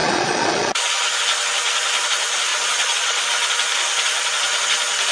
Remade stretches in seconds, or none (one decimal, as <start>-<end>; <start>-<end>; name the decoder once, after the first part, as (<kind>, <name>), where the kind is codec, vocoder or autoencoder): 0.0-1.2 (vocoder, Vocos); 2.5-3.2